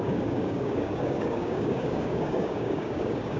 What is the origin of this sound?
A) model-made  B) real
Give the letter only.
A